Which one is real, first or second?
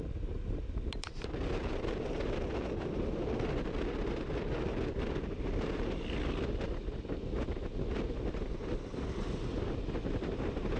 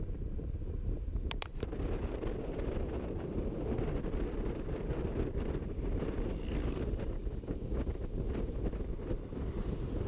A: first